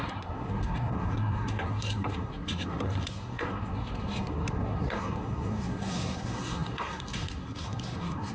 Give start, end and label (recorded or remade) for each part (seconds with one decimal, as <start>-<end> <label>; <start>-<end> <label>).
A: 0.0-8.3 remade